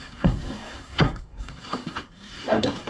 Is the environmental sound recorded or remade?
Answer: remade